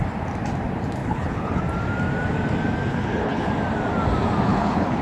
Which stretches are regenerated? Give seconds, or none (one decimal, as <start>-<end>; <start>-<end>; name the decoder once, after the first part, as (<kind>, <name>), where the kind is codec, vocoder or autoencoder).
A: 1.0-1.6 (codec, HILCodec); 2.9-3.5; 4.5-5.0